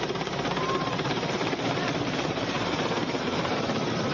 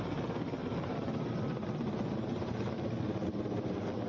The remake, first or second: first